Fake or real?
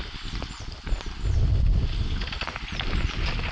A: real